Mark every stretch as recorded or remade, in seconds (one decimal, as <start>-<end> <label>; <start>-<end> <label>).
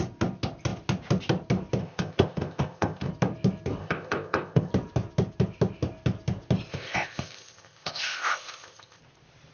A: 0.0-1.8 recorded; 1.8-3.1 remade; 3.1-3.8 recorded; 3.8-4.7 remade; 4.7-6.7 recorded; 6.7-9.0 remade; 9.0-9.5 recorded